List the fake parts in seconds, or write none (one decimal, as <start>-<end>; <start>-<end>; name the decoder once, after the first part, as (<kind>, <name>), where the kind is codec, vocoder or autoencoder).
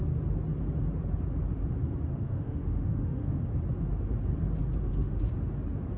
2.1-3.4 (autoencoder, DAC-VAE); 4.8-5.3